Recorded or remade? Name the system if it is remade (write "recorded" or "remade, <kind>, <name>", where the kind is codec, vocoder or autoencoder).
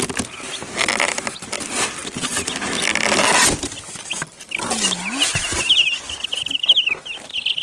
recorded